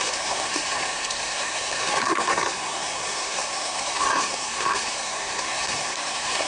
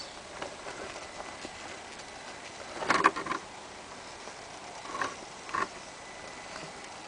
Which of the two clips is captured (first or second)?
second